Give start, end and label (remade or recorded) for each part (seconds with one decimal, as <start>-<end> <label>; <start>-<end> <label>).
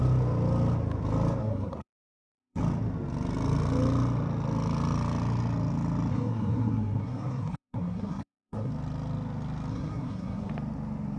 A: 0.0-1.4 recorded; 1.4-2.6 remade; 2.6-6.1 recorded; 6.1-8.7 remade; 8.7-9.7 recorded; 9.7-10.5 remade; 10.5-11.2 recorded